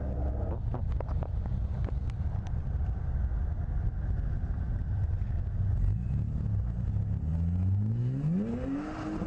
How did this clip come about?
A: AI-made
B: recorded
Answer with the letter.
B